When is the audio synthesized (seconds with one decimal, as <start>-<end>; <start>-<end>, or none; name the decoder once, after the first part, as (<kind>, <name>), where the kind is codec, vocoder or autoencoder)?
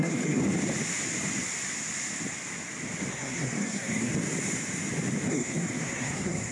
0.0-0.4 (codec, SNAC); 3.1-4.1; 5.3-6.5